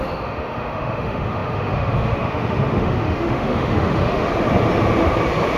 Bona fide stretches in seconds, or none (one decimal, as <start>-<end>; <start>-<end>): 4.3-5.6